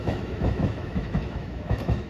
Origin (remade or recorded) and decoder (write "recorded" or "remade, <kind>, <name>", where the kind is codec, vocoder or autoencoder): remade, autoencoder, DAC-VAE